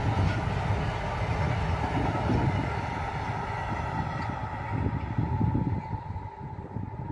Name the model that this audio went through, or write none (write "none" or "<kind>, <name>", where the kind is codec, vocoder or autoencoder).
none